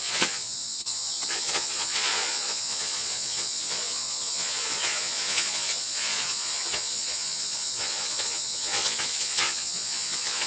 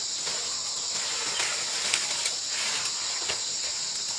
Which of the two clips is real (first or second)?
second